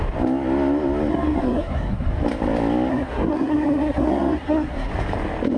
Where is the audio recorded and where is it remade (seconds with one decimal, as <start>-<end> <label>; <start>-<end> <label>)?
0.0-1.1 recorded; 1.1-2.1 remade; 2.1-2.9 recorded; 2.9-4.9 remade; 4.9-5.6 recorded